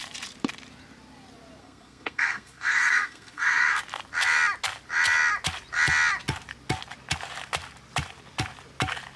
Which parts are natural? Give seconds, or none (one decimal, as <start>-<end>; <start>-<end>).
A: 0.0-1.6; 3.8-9.2